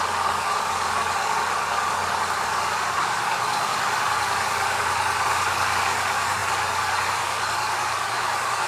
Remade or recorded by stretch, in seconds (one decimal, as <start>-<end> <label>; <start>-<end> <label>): 0.0-8.7 remade